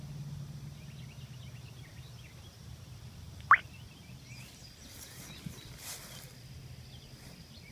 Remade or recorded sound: recorded